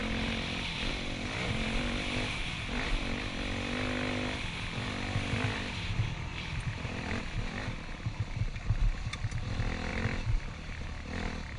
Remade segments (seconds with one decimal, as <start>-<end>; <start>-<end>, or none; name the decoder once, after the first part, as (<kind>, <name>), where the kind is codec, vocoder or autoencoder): 0.0-0.9 (vocoder, BigVGAN v2); 6.3-7.2; 9.9-10.8